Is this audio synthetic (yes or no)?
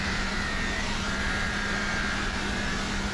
yes